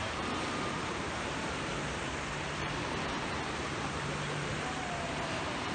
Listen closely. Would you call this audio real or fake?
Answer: fake